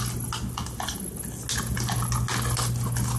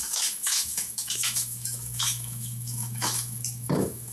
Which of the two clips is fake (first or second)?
second